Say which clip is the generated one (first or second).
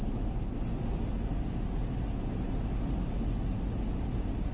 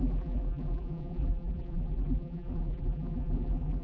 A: second